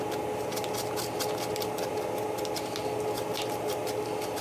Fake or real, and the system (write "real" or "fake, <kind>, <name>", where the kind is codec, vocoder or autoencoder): real